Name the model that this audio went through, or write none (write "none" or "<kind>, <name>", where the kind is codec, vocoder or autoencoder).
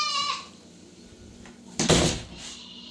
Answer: none